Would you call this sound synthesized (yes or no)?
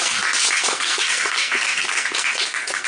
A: yes